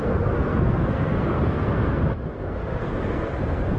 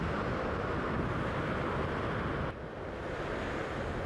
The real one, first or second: second